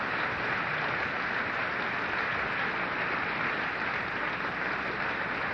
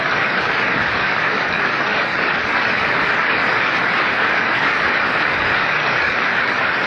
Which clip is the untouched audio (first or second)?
first